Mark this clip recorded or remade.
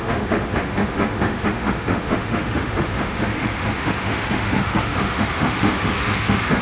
remade